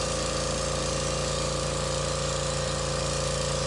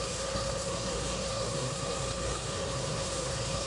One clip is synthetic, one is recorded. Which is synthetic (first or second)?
second